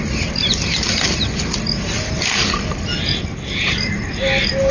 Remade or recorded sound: recorded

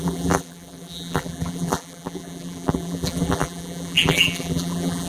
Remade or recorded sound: remade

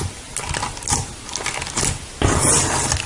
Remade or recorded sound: recorded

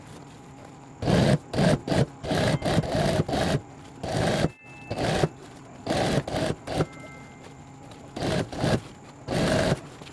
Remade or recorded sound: recorded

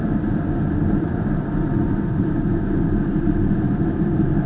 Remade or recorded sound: remade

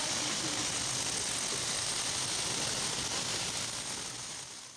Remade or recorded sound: recorded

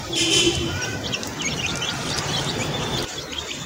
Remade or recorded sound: remade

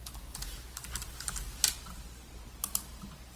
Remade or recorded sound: recorded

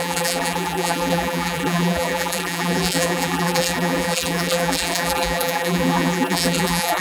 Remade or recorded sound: remade